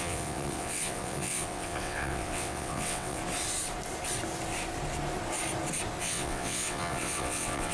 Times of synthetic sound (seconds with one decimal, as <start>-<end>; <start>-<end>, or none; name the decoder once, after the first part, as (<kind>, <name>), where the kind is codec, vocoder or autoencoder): 0.0-3.2 (vocoder, WaveNeXt); 6.0-7.7